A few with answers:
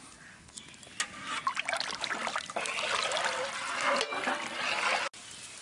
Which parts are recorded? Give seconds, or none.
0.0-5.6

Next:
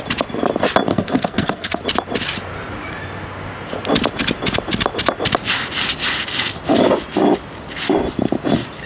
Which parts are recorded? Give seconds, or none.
0.0-0.9; 1.8-8.8

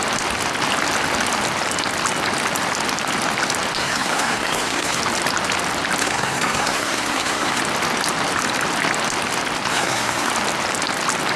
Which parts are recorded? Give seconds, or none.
0.0-3.8; 5.0-6.0; 7.6-9.7; 10.3-11.4